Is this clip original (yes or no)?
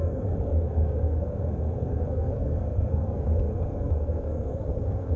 no